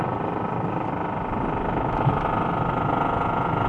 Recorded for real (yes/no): yes